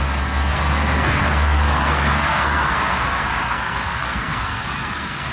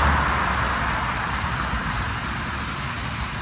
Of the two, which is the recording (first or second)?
second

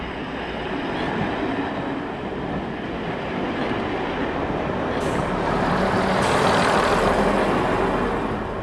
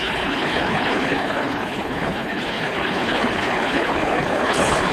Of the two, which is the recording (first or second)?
first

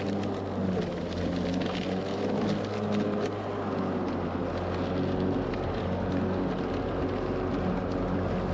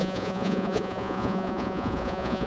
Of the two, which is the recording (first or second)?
first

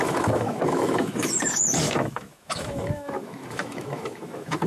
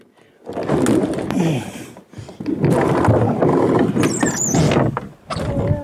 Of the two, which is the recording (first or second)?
second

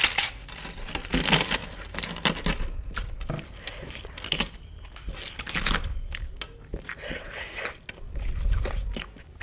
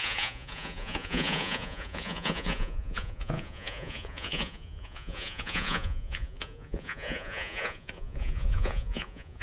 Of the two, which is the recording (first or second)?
first